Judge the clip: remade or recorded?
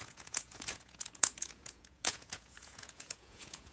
remade